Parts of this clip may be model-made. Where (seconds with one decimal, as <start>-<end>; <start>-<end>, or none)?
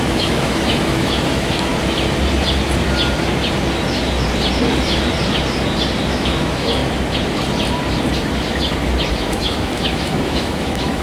0.0-1.7; 6.0-6.8; 9.1-11.0